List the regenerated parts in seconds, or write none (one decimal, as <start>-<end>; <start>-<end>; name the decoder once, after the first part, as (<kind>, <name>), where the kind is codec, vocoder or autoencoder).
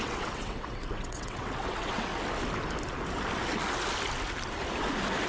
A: 0.0-2.1 (vocoder, WaveNeXt)